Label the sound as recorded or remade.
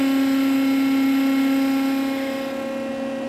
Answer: recorded